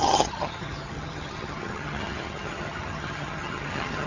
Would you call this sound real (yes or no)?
no